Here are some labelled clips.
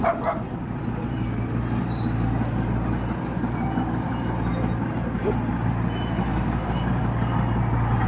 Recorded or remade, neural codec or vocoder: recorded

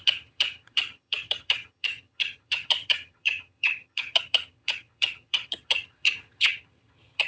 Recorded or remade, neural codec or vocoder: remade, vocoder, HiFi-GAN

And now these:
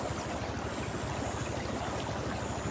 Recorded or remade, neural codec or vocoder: recorded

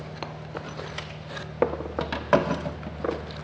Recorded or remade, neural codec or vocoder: recorded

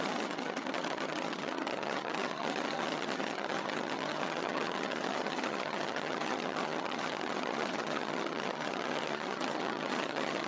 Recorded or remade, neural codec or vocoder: remade, vocoder, HiFi-GAN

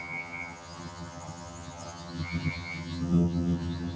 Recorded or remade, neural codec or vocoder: remade, vocoder, HiFi-GAN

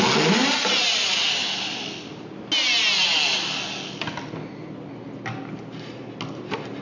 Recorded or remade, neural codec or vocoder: recorded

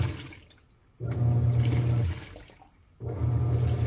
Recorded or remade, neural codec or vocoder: recorded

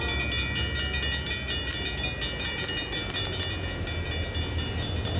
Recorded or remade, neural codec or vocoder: recorded